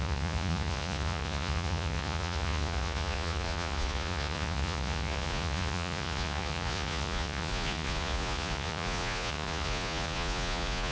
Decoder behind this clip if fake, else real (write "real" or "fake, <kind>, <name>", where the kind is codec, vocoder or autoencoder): fake, vocoder, Vocos